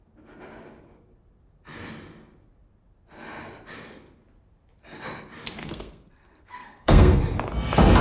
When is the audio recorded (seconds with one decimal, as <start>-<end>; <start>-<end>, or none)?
0.0-5.6; 7.2-8.0